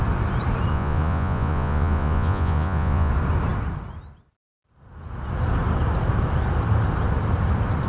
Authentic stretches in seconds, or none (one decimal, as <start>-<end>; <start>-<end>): 0.0-0.7; 3.1-7.9